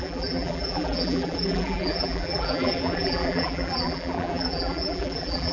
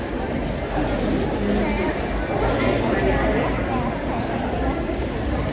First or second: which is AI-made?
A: first